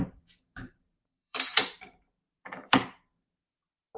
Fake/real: fake